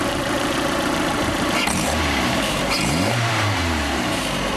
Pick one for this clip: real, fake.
fake